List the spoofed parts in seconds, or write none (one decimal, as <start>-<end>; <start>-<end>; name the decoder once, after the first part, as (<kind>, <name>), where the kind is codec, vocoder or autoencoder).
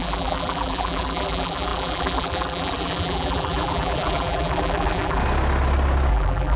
0.0-5.2 (vocoder, BigVGAN v2); 6.1-6.6